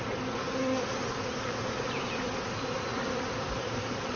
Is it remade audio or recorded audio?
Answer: recorded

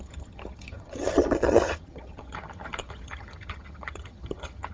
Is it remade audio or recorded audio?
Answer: remade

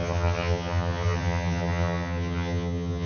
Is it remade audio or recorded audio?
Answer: remade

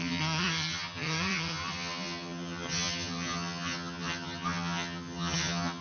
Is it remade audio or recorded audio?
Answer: remade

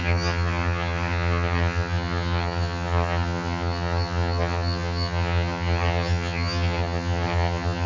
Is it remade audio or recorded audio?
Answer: remade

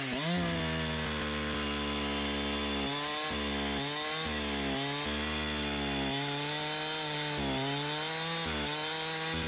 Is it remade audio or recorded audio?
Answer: recorded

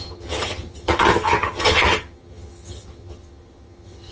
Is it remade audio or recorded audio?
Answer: remade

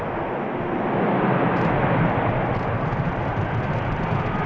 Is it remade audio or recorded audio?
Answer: recorded